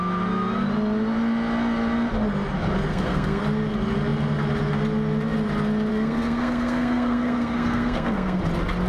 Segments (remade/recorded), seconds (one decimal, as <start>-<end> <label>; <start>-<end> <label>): 0.0-2.9 recorded; 2.9-3.4 remade; 3.4-5.9 recorded; 5.9-8.4 remade; 8.4-8.9 recorded